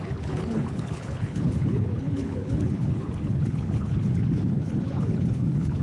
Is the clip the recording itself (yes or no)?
no